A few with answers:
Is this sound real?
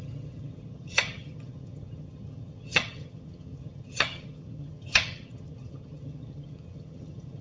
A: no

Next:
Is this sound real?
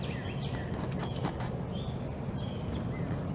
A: yes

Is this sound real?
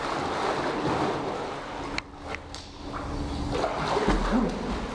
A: yes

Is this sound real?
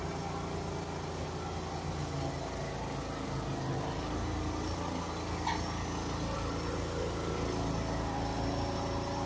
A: yes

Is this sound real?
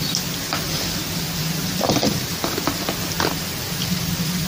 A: yes